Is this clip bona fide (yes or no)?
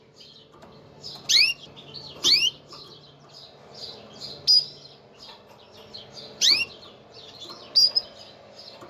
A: yes